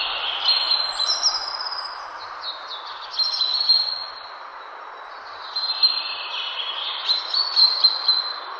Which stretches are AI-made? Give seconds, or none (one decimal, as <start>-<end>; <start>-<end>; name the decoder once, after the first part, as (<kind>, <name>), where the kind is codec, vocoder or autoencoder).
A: none